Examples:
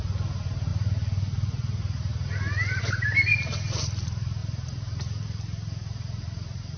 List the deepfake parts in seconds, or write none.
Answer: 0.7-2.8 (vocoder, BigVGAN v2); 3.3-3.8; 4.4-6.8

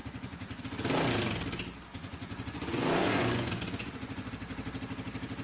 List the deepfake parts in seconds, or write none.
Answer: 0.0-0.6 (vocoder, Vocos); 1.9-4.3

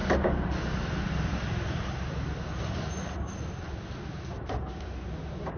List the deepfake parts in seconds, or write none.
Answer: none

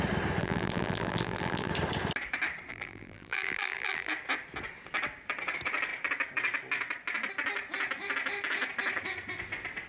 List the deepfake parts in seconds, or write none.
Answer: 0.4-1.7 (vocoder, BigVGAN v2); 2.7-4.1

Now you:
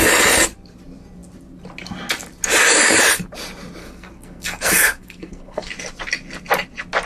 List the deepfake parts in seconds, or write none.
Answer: 3.8-5.7 (codec, SNAC)